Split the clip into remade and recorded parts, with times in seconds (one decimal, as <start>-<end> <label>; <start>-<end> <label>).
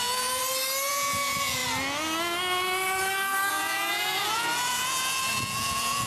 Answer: 0.0-0.4 remade; 0.4-0.9 recorded; 0.9-1.6 remade; 1.6-3.5 recorded; 3.5-6.1 remade